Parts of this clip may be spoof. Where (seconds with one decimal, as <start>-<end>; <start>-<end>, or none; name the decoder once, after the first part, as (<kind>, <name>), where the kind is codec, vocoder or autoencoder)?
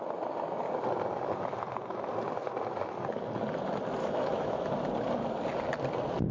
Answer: 4.0-4.7 (autoencoder, DAC-VAE)